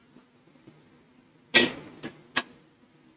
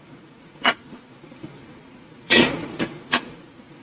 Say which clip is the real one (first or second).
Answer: first